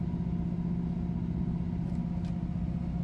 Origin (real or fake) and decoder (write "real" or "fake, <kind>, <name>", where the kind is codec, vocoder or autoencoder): real